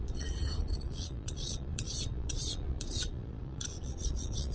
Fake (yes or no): yes